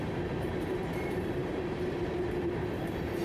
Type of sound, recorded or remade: remade